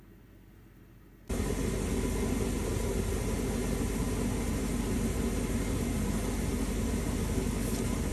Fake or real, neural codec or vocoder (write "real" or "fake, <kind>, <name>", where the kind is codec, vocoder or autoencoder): real